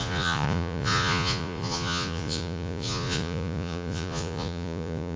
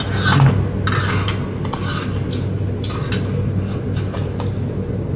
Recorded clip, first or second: second